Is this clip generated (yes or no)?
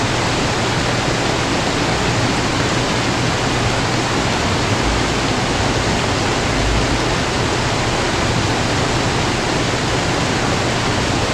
no